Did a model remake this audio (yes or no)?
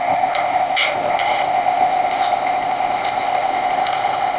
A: yes